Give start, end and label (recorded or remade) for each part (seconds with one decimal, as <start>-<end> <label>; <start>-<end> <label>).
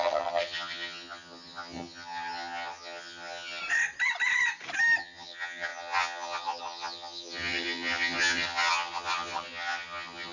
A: 0.0-3.6 remade; 3.6-5.0 recorded; 5.0-10.3 remade